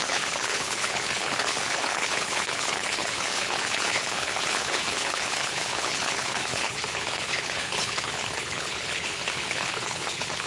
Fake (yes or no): yes